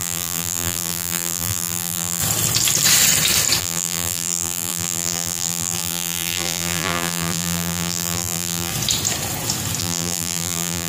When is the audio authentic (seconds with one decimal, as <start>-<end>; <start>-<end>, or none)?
2.2-3.6; 8.7-9.8